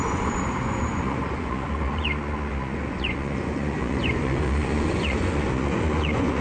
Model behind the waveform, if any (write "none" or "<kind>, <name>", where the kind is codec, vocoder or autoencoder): vocoder, Vocos